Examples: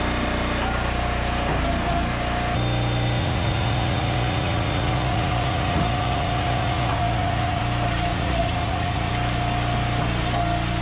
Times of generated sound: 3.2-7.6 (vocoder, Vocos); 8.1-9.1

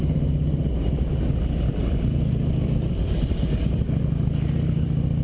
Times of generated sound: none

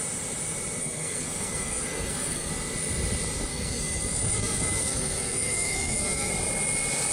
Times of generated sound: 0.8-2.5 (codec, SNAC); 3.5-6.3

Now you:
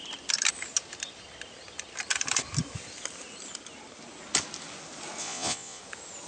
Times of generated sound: 5.2-5.8 (vocoder, Vocos)

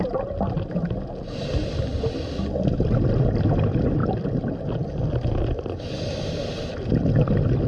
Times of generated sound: none